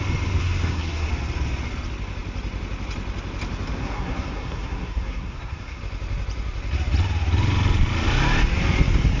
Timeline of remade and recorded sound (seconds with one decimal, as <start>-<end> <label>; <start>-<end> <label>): 0.0-0.4 recorded; 0.4-1.1 remade; 1.1-3.8 recorded; 3.8-5.8 remade; 5.8-9.2 recorded